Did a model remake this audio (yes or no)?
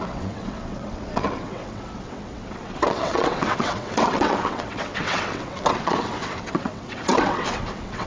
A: yes